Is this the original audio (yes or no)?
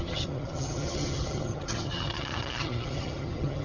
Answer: no